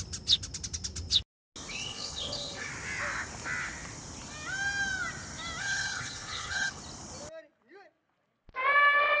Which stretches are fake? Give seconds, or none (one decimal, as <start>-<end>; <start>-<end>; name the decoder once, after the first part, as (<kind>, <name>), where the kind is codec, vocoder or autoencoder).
1.7-2.7 (codec, HILCodec); 5.6-6.8